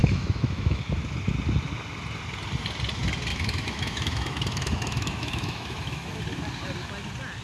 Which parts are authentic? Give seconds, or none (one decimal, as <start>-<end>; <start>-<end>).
0.8-3.3; 6.2-7.4